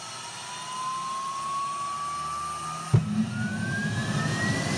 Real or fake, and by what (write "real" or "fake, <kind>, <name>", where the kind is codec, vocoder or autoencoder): real